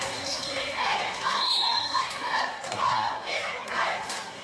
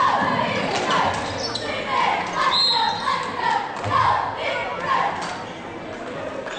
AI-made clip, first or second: first